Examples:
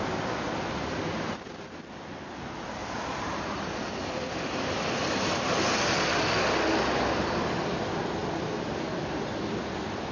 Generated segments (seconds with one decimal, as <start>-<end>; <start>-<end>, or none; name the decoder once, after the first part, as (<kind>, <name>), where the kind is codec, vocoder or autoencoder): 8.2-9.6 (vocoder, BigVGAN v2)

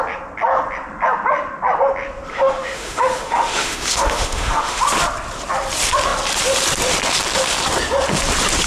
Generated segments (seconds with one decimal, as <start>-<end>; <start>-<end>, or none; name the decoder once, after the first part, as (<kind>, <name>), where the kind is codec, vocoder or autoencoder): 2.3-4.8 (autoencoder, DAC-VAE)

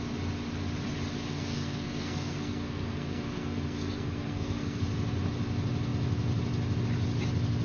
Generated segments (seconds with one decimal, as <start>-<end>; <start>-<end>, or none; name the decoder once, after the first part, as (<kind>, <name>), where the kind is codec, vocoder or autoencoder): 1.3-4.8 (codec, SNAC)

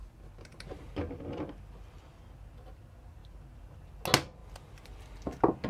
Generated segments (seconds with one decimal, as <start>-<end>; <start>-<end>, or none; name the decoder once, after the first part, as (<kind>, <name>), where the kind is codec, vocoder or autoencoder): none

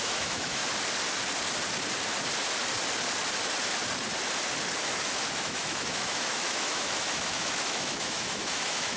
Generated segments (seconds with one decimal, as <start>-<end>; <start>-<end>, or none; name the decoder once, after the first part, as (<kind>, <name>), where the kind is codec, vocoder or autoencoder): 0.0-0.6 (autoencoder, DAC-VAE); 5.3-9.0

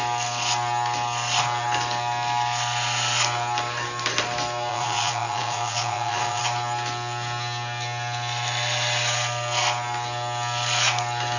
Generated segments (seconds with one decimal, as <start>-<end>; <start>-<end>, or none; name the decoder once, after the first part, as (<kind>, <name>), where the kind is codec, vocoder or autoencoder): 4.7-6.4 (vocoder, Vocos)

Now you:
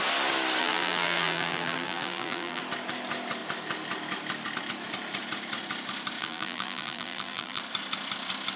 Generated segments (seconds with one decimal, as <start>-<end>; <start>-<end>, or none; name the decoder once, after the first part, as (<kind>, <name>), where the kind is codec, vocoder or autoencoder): 0.6-2.6 (vocoder, BigVGAN v2); 6.2-7.6

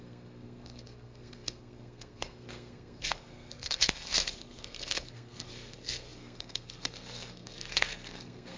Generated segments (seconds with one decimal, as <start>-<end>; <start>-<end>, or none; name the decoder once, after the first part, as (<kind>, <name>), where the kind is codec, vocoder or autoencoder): 0.0-8.6 (codec, SNAC)